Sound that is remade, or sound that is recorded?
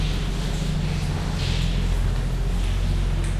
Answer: recorded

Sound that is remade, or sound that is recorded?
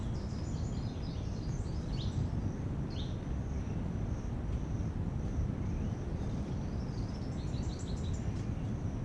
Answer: remade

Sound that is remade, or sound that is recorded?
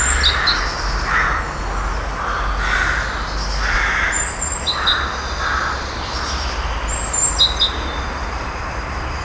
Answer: recorded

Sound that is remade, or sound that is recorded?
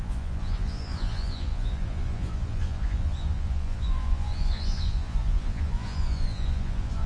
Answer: remade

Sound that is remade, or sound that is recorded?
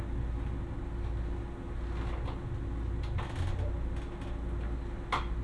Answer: recorded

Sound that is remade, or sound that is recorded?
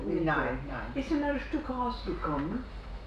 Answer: recorded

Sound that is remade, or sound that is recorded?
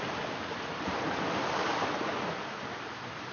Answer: recorded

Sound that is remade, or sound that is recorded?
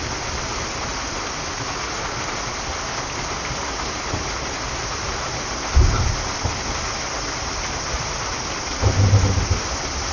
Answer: recorded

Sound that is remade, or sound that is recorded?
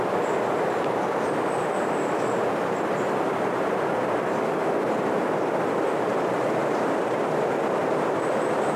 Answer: remade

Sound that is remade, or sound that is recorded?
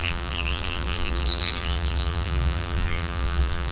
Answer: remade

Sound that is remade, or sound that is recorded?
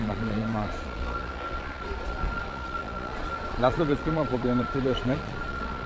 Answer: remade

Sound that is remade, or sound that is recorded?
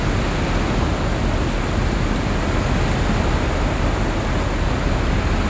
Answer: recorded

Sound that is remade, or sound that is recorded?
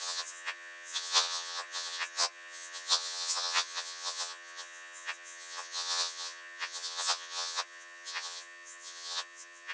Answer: remade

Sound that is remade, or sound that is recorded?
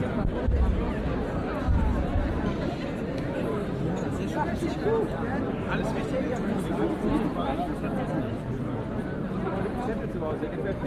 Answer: recorded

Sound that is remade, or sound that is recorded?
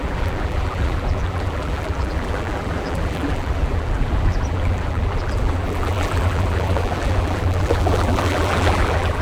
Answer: remade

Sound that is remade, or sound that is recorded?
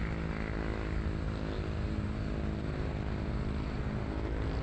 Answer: recorded